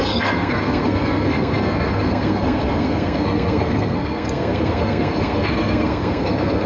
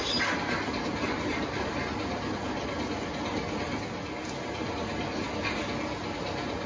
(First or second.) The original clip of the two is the second